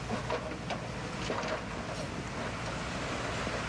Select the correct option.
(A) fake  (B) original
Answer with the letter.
B